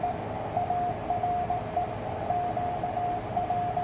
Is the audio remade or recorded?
recorded